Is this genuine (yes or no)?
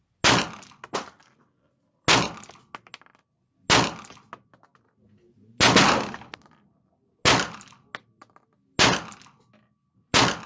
yes